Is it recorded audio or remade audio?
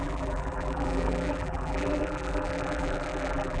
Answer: remade